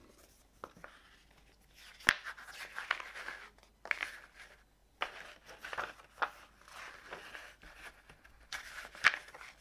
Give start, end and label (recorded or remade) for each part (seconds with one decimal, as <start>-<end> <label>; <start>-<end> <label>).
0.0-9.6 recorded